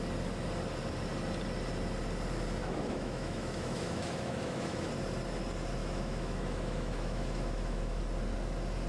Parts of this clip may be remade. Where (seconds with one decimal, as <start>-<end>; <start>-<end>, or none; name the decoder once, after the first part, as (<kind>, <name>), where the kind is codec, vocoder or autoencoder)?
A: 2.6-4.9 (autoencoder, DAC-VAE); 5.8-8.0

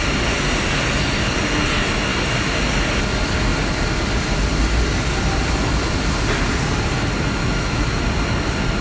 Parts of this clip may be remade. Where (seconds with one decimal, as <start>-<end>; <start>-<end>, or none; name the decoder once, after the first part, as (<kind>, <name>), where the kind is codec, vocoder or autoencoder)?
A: 7.4-8.0 (autoencoder, DAC-VAE)

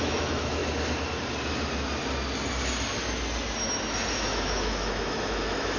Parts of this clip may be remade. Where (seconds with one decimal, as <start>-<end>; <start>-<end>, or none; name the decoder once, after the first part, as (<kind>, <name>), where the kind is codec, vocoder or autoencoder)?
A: 0.0-0.6 (autoencoder, DAC-VAE); 4.1-5.8

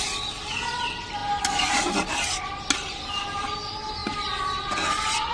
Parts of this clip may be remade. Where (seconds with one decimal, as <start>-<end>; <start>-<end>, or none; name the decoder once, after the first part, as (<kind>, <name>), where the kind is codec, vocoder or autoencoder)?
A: none

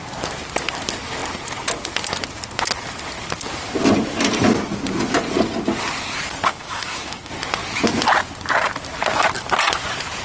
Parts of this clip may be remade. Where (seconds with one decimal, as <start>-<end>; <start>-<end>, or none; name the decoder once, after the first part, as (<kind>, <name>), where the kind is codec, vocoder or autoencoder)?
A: 6.5-7.3 (autoencoder, DAC-VAE)

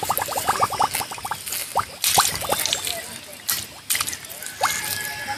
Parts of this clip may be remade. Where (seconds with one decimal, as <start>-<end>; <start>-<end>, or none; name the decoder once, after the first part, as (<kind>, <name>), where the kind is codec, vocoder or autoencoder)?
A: none

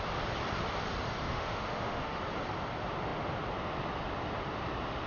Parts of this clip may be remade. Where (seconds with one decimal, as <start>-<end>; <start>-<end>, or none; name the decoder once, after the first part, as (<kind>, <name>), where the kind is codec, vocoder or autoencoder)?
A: 1.2-2.2 (autoencoder, DAC-VAE)

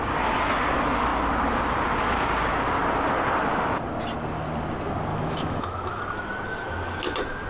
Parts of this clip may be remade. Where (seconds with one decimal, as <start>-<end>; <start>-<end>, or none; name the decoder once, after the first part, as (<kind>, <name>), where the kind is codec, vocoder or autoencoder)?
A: 5.1-6.0 (autoencoder, DAC-VAE)